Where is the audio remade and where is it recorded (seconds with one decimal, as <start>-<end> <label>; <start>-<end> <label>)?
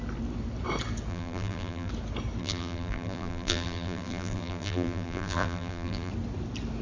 0.0-1.1 recorded; 1.1-1.9 remade; 1.9-2.4 recorded; 2.4-6.1 remade; 6.1-6.8 recorded